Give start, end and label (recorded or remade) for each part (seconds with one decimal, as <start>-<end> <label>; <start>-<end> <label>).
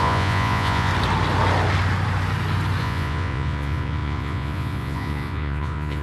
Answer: 0.0-0.9 remade; 0.9-2.8 recorded; 2.8-6.0 remade